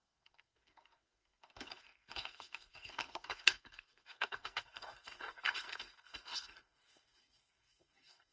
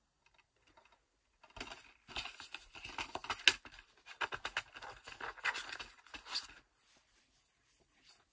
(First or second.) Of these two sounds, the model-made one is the first